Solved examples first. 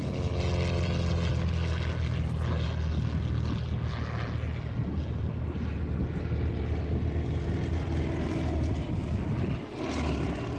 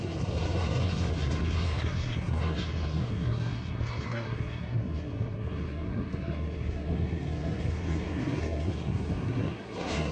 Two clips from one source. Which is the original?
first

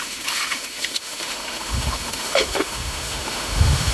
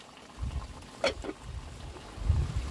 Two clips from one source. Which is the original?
second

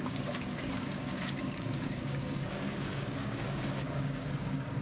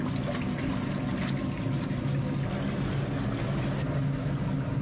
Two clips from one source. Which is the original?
second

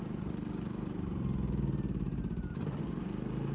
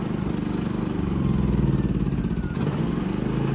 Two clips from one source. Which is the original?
second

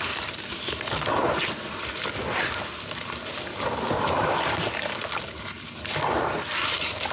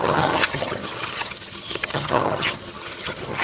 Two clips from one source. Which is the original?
first